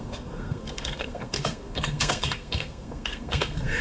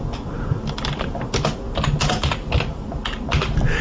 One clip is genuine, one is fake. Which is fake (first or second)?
first